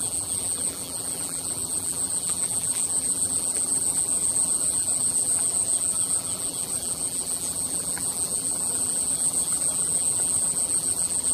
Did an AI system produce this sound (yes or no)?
yes